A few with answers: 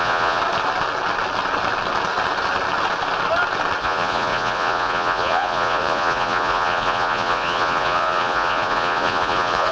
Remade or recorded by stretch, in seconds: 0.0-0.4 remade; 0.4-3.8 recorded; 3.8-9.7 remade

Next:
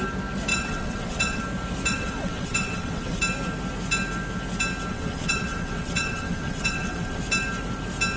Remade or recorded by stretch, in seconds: 0.0-0.5 recorded; 0.5-1.4 remade; 1.4-1.9 recorded; 1.9-3.2 remade; 3.2-4.9 recorded; 4.9-7.2 remade; 7.2-8.2 recorded

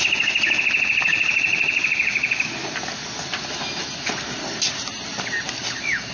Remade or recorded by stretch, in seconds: 0.0-6.1 recorded

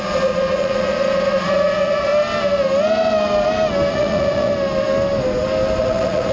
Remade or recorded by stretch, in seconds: 0.0-2.1 remade; 2.1-3.9 recorded; 3.9-4.5 remade; 4.5-5.8 recorded; 5.8-6.3 remade

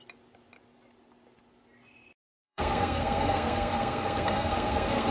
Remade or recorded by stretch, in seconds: 0.0-2.2 recorded; 2.2-5.1 remade

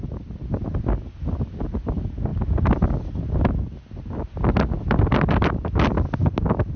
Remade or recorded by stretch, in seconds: 0.0-6.8 recorded

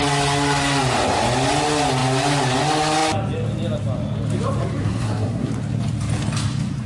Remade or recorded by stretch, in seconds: 0.0-4.8 recorded; 4.8-5.5 remade; 5.5-6.9 recorded